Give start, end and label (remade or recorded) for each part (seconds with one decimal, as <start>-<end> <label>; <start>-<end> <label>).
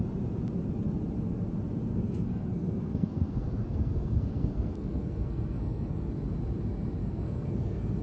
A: 0.0-1.9 recorded; 1.9-6.1 remade; 6.1-7.0 recorded; 7.0-8.0 remade